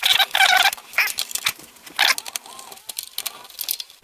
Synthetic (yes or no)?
no